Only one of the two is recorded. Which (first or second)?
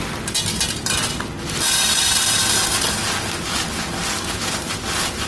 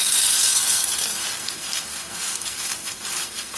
first